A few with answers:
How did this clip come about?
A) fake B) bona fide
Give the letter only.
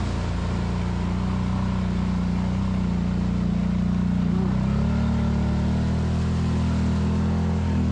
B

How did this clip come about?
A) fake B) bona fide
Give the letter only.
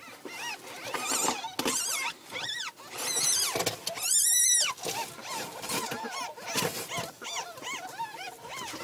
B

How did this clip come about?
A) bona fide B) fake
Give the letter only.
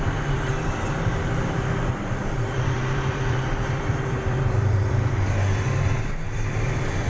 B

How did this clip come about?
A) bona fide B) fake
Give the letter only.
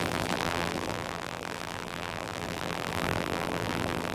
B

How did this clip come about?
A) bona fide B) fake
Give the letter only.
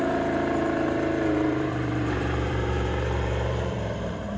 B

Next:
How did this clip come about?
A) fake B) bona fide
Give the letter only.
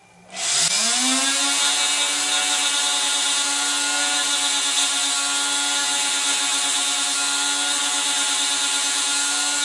B